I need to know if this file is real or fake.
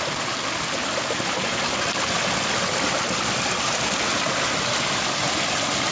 real